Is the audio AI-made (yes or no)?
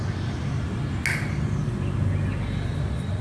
no